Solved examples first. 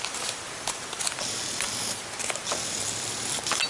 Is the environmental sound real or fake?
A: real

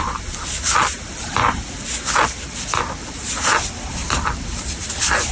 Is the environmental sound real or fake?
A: real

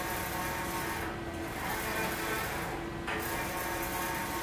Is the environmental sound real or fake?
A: real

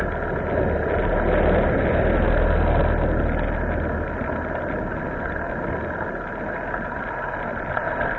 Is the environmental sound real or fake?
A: real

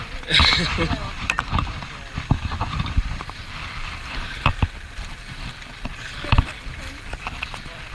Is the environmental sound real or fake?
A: fake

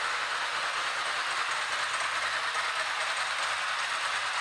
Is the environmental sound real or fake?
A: real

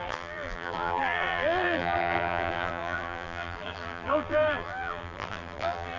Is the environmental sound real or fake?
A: fake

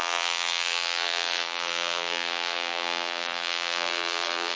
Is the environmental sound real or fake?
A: fake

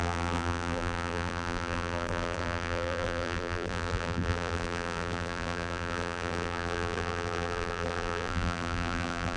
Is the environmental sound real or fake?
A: fake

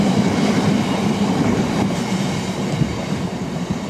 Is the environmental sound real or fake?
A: real